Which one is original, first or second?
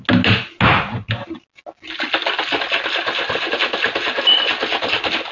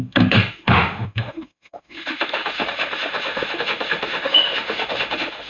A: first